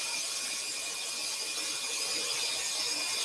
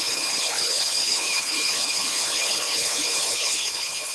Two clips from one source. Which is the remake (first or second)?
second